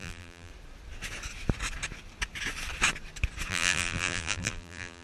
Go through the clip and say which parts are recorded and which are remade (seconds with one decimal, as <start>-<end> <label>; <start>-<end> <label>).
0.0-0.5 remade; 0.5-3.5 recorded; 3.5-5.0 remade